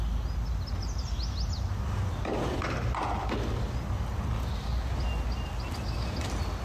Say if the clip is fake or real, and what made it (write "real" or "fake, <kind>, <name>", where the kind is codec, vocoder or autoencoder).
real